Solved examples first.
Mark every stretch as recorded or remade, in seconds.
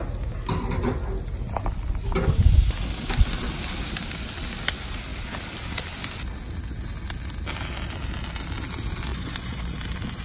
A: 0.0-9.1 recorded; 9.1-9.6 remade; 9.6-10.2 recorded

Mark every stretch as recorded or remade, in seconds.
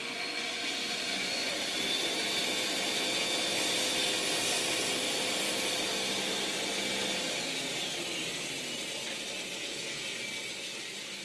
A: 0.0-1.5 remade; 1.5-11.2 recorded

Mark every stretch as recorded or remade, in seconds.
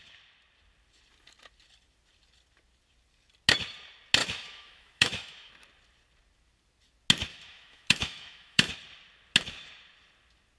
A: 0.0-4.2 recorded; 4.2-5.5 remade; 5.5-7.3 recorded; 7.3-8.7 remade; 8.7-10.6 recorded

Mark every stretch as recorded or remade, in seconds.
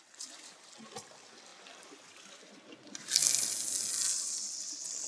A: 0.0-5.1 recorded